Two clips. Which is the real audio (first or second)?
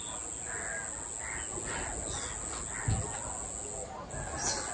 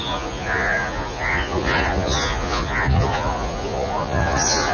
first